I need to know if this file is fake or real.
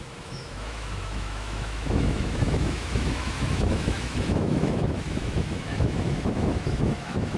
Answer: fake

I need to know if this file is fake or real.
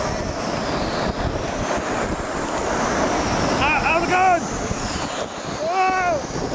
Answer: real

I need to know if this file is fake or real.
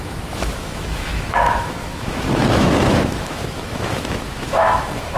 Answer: fake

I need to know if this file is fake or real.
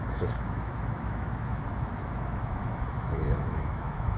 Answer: fake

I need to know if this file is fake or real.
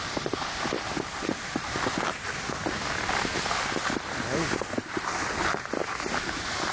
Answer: real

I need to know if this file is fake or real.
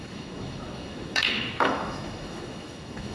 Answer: fake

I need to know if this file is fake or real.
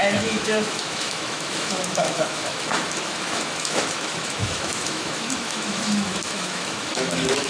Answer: fake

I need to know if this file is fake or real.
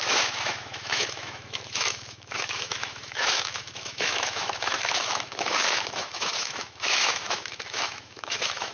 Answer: fake